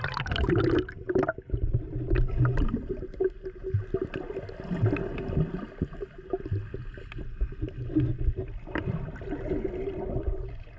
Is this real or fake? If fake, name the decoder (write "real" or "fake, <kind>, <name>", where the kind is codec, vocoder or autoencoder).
real